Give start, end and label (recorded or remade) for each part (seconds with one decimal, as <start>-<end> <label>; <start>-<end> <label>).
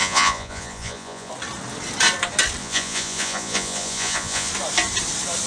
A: 0.0-1.3 remade; 1.3-2.6 recorded; 2.6-4.5 remade; 4.5-5.5 recorded